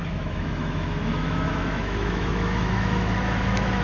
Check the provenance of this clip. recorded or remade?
remade